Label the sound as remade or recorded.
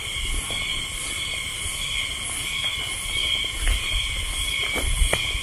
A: recorded